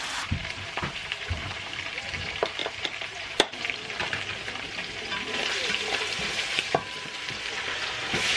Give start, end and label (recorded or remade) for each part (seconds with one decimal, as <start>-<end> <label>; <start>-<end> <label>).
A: 0.0-8.4 remade